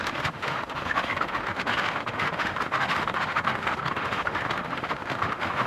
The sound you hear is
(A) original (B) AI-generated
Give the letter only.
B